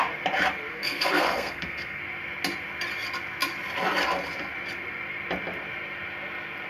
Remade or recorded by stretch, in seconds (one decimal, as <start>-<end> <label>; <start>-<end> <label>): 0.0-0.7 recorded; 0.7-2.0 remade; 2.0-6.7 recorded